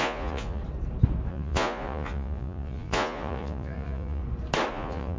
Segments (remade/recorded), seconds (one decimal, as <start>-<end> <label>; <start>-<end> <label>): 0.0-0.6 remade; 0.6-1.3 recorded; 1.3-4.2 remade; 4.2-4.7 recorded; 4.7-5.2 remade